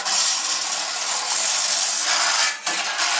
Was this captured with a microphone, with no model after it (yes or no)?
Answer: yes